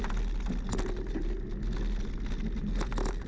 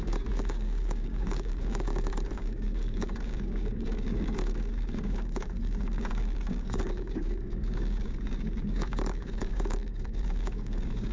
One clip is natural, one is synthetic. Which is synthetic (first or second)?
second